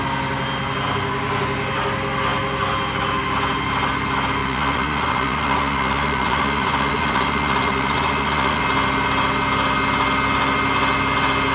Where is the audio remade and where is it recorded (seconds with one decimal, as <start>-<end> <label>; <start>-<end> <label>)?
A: 0.0-4.4 recorded; 4.4-8.6 remade; 8.6-11.5 recorded